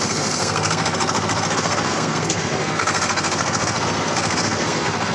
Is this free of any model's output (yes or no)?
no